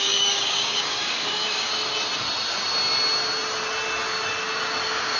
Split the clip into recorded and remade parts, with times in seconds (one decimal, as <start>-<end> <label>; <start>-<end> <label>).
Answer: 0.0-1.7 remade; 1.7-4.8 recorded; 4.8-5.2 remade